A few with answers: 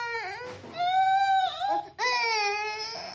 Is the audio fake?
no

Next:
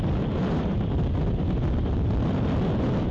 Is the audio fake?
no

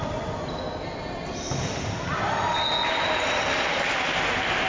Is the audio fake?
no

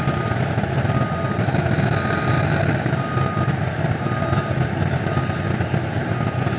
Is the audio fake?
no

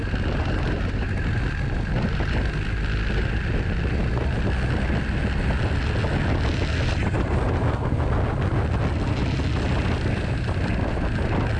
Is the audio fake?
no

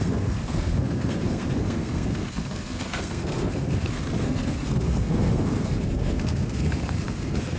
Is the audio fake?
yes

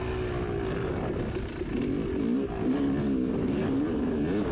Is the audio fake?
no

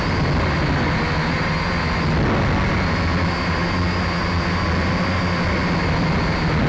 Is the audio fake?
no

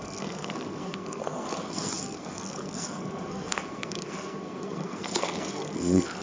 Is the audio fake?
yes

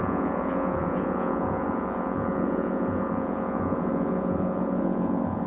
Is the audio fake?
yes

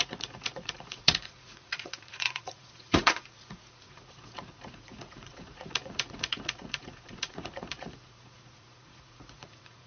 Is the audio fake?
yes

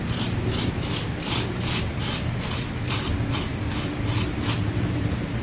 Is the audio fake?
yes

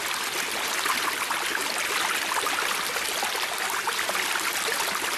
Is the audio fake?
no